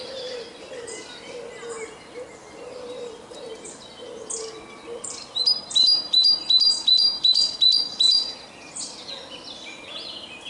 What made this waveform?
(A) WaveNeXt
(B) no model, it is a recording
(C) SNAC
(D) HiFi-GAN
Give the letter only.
B